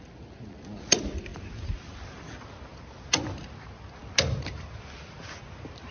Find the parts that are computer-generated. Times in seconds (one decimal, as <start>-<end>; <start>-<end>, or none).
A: none